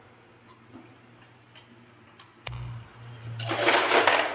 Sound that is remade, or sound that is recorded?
recorded